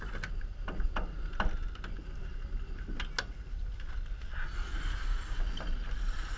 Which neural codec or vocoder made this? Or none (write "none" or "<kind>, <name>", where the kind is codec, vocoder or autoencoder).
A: none